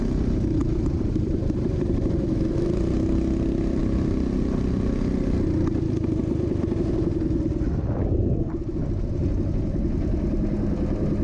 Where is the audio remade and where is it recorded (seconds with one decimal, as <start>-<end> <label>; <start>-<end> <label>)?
0.0-0.6 recorded; 0.6-2.0 remade; 2.0-11.2 recorded